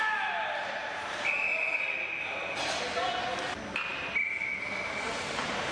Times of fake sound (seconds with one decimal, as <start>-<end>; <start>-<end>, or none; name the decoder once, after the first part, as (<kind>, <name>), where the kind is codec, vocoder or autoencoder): none

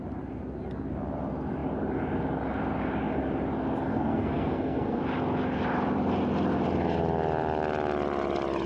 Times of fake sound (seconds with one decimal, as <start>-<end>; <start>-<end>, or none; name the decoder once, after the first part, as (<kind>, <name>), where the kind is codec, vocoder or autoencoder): 3.9-5.0 (codec, SNAC)

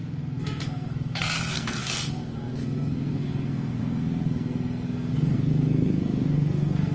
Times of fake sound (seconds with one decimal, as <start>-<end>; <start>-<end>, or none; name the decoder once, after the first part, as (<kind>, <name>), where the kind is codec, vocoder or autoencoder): 0.0-6.9 (codec, SNAC)